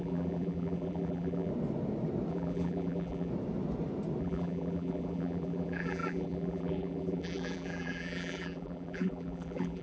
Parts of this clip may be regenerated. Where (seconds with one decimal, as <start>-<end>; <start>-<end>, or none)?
0.0-1.5; 2.3-3.3; 4.2-9.8